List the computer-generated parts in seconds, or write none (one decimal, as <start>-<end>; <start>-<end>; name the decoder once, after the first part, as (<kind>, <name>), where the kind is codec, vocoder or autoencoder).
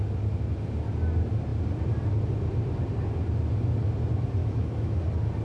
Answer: 4.4-5.0 (autoencoder, DAC-VAE)